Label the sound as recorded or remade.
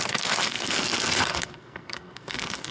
remade